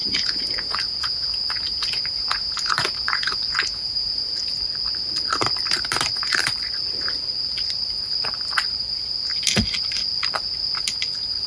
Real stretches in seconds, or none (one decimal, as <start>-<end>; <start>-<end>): 4.4-11.5

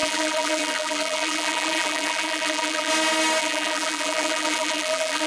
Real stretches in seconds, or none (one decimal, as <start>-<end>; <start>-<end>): 2.9-3.4